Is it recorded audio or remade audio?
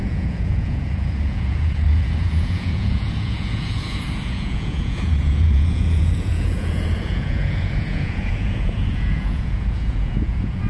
remade